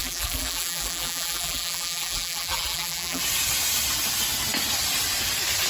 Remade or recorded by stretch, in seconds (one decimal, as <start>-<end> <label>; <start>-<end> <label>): 0.0-3.2 remade; 3.2-5.7 recorded